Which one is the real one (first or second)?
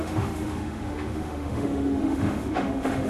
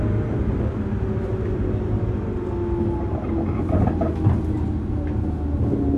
second